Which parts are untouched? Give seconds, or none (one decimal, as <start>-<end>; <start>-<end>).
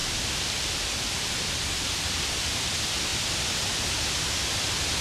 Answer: 0.0-5.0